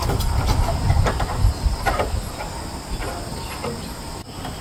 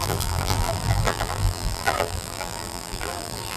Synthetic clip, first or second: second